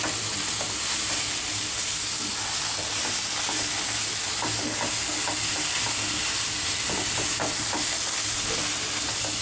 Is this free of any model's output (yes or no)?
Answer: yes